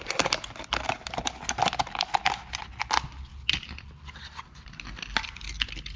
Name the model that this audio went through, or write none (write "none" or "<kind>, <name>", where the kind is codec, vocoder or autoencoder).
none